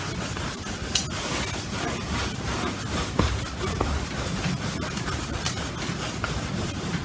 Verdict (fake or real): real